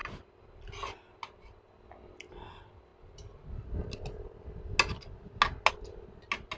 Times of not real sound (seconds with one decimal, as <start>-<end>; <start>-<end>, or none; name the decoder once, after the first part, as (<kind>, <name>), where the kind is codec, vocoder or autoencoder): none